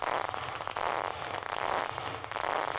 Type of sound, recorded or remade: recorded